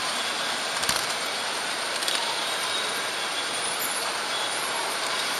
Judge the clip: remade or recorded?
remade